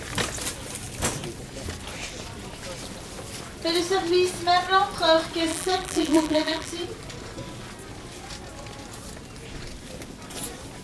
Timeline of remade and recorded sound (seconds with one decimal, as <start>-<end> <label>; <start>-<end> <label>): 0.0-5.5 recorded; 5.5-6.7 remade; 6.7-10.8 recorded